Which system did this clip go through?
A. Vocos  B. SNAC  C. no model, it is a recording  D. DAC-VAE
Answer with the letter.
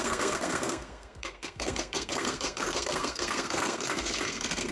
B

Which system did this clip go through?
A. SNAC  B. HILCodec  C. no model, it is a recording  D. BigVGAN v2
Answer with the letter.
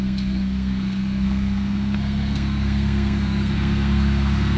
A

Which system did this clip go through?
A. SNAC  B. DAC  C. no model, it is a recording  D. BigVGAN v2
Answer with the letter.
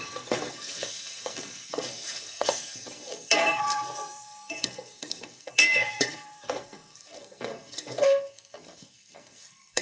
A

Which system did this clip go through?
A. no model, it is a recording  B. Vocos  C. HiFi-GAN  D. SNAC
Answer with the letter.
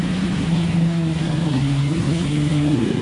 D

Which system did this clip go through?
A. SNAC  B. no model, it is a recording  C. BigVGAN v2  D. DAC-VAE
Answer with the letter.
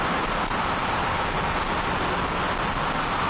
B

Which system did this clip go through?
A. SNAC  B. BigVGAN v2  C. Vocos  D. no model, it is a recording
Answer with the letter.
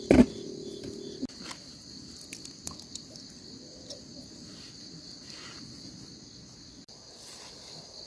D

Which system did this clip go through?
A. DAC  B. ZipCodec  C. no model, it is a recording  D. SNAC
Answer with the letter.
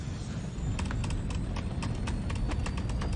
C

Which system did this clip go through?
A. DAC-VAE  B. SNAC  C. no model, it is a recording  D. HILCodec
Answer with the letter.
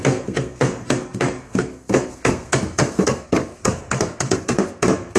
B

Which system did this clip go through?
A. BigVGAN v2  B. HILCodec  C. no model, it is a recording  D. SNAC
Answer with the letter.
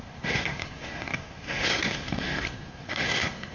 D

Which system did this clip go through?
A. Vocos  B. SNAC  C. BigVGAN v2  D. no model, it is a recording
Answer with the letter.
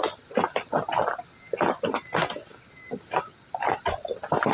D